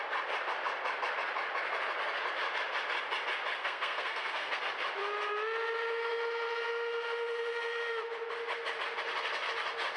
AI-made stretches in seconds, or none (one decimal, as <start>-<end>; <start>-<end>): 3.6-4.6